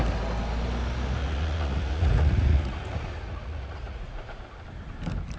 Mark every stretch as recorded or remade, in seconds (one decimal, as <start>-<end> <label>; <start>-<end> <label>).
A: 0.0-1.2 recorded; 1.2-4.4 remade; 4.4-5.4 recorded